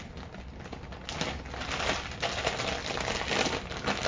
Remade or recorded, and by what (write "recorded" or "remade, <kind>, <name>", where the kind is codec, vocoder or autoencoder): recorded